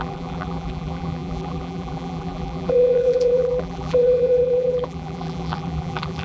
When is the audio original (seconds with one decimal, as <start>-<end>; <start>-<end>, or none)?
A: none